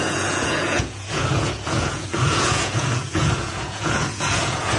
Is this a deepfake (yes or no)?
yes